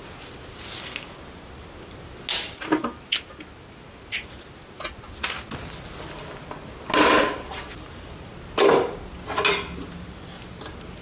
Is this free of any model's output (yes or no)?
yes